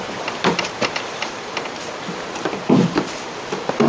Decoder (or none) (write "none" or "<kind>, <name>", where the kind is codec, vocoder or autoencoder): vocoder, BigVGAN v2